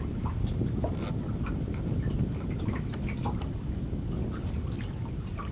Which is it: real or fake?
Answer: real